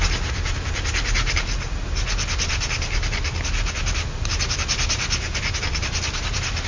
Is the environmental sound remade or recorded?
recorded